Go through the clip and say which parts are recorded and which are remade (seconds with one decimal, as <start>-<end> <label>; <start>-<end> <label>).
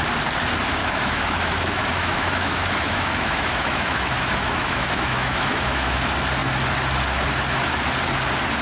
0.0-0.8 recorded; 0.8-6.0 remade; 6.0-8.6 recorded